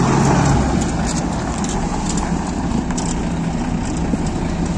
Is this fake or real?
real